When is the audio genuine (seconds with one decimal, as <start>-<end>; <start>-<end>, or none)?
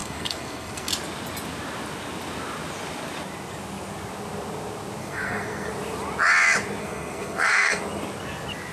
0.9-5.0; 5.7-6.8; 7.8-8.7